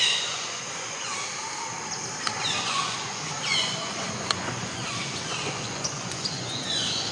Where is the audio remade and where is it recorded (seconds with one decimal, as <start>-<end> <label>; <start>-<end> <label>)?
0.0-1.1 remade; 1.1-2.3 recorded; 2.3-7.1 remade